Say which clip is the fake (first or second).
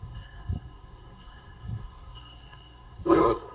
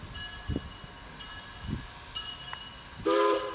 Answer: first